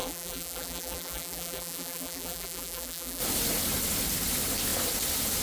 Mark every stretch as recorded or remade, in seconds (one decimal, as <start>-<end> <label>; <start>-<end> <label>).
0.0-3.2 remade; 3.2-5.4 recorded